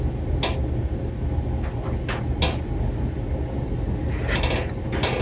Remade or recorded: recorded